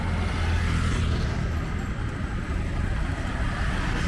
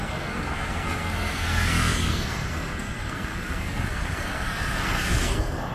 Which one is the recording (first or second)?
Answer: first